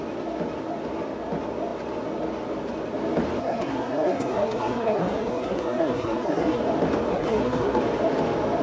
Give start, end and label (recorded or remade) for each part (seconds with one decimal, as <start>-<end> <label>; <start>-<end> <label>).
0.0-3.4 recorded; 3.4-6.6 remade; 6.6-7.1 recorded; 7.1-7.8 remade; 7.8-8.6 recorded